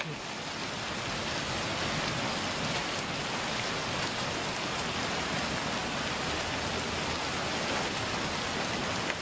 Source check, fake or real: real